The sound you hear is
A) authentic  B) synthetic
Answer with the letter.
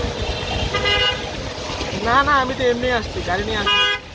A